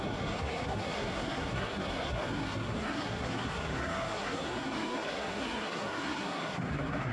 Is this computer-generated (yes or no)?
yes